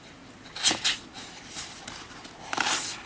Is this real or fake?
real